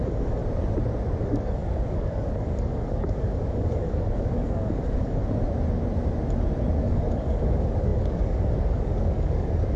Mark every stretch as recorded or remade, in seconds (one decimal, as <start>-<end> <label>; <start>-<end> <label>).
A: 0.0-0.4 remade; 0.4-1.2 recorded; 1.2-5.2 remade; 5.2-6.8 recorded; 6.8-9.8 remade